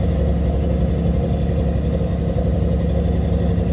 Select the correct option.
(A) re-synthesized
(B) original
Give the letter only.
B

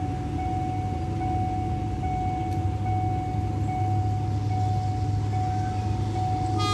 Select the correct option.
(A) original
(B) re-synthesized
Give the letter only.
A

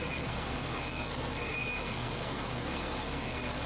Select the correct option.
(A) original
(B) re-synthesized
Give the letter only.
B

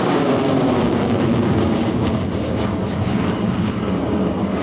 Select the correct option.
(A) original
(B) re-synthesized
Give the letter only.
B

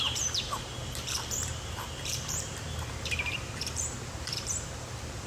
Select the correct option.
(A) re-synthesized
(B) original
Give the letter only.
A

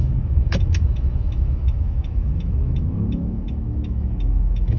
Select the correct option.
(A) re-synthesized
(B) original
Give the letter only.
A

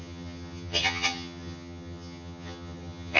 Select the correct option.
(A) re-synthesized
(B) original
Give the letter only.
A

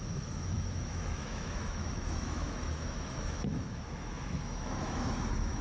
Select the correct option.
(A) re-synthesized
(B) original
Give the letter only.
A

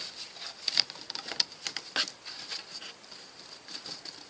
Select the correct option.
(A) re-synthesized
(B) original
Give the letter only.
B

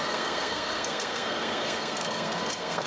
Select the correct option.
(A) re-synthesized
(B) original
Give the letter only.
A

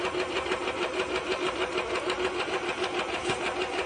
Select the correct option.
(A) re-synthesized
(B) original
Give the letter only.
B